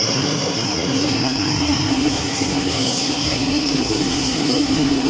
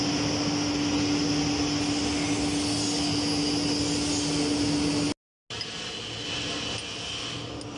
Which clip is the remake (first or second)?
first